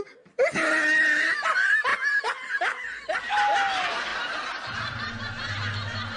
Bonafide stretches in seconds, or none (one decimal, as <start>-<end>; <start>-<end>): 0.0-4.1; 5.1-6.2